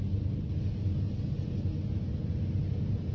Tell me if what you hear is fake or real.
real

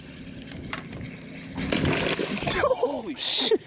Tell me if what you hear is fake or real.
real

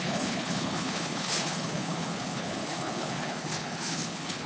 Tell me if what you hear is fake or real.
fake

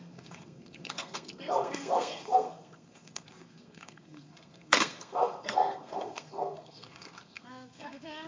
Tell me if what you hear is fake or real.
fake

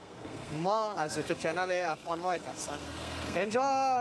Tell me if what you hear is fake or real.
fake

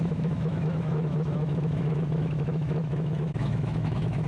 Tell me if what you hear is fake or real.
fake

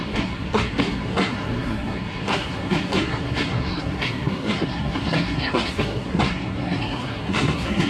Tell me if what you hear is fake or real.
fake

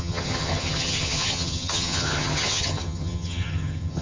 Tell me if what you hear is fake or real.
fake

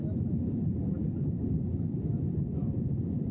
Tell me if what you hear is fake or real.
real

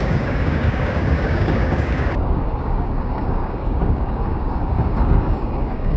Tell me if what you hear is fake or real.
fake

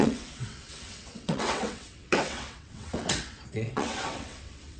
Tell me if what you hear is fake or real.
fake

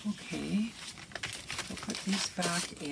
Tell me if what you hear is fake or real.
real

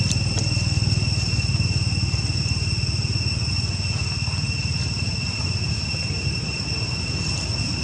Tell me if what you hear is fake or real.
real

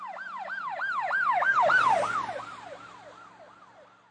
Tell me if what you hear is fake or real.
real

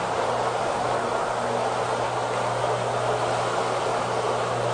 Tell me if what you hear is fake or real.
real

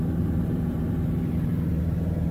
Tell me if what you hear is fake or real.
fake